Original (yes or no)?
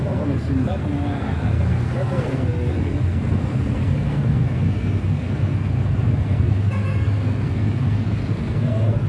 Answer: no